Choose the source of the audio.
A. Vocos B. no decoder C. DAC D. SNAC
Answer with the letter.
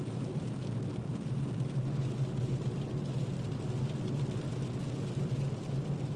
B